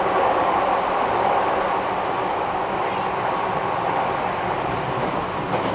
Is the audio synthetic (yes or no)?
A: no